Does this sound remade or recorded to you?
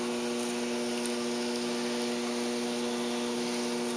recorded